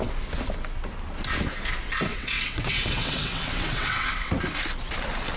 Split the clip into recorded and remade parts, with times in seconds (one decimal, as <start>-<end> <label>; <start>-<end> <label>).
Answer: 0.0-2.1 recorded; 2.1-4.3 remade; 4.3-5.4 recorded